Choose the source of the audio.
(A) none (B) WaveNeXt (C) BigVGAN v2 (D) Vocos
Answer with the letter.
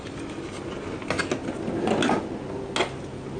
A